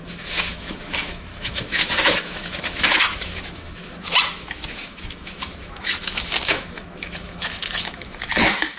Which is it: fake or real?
fake